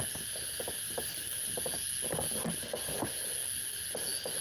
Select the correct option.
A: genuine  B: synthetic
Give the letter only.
A